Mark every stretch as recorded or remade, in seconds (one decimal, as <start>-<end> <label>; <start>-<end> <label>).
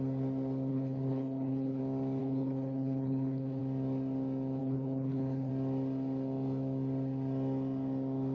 0.0-0.7 recorded; 0.7-1.8 remade; 1.8-2.2 recorded; 2.2-3.6 remade; 3.6-4.6 recorded; 4.6-5.5 remade; 5.5-8.3 recorded